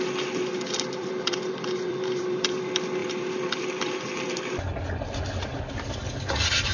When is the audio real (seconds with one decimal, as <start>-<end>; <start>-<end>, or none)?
0.0-1.0; 2.6-3.0; 4.3-6.7